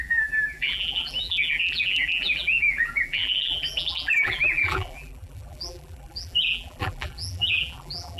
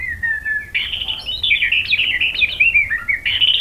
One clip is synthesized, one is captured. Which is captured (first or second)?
second